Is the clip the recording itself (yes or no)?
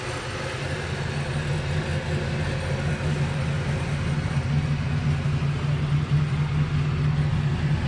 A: yes